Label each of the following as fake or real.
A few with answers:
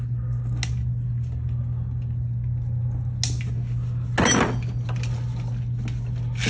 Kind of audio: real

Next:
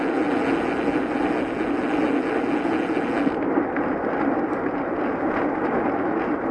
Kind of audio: real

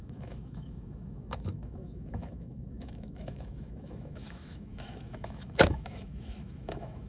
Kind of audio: fake